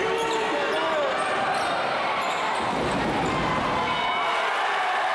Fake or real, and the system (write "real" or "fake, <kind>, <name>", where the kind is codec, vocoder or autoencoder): real